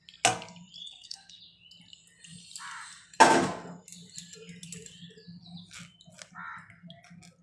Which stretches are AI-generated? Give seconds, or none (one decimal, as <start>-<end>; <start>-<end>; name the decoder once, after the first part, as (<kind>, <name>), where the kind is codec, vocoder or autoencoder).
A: 0.8-1.4 (codec, SNAC)